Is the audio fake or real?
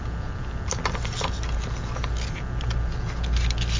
real